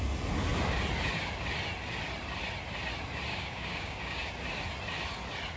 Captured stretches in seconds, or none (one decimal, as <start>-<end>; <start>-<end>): 0.0-3.3; 4.3-5.6